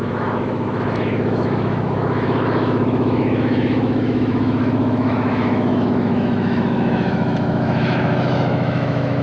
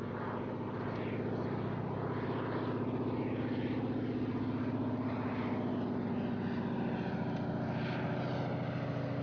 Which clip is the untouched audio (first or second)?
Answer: second